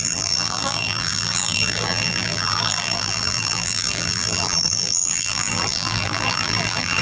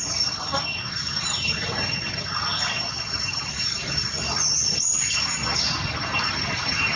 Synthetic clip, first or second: first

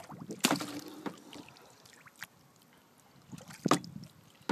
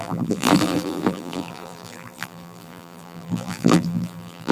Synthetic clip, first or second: second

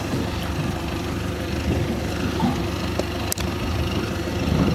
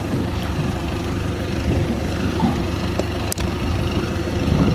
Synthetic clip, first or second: second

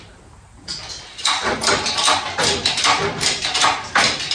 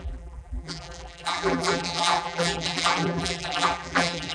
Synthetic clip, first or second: second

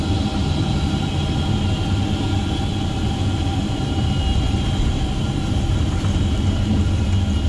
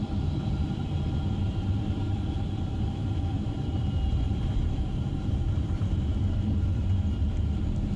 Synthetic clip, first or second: second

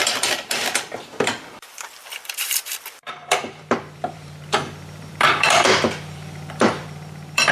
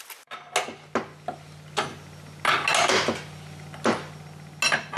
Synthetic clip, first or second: first